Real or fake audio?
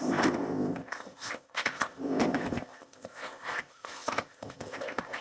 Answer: fake